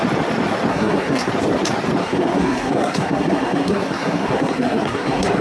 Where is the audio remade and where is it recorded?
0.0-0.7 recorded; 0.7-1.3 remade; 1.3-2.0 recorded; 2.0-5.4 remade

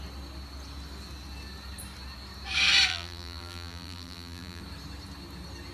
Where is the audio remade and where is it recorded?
0.0-2.9 recorded; 2.9-4.6 remade; 4.6-5.7 recorded

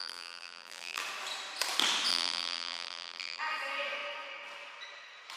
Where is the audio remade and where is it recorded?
0.0-1.0 remade; 1.0-2.1 recorded; 2.1-3.4 remade; 3.4-5.4 recorded

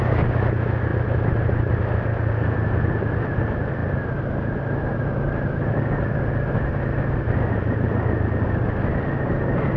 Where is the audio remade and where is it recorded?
0.0-9.8 recorded

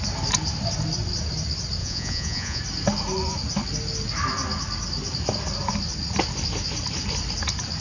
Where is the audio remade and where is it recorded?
0.0-1.8 recorded; 1.8-2.6 remade; 2.6-7.8 recorded

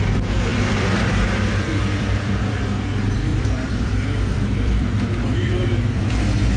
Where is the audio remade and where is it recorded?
0.0-0.5 recorded; 0.5-2.6 remade; 2.6-3.3 recorded; 3.3-6.0 remade; 6.0-6.6 recorded